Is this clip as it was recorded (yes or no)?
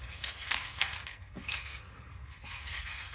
no